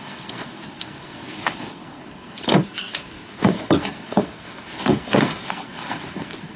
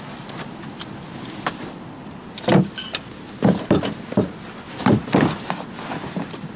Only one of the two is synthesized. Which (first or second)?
first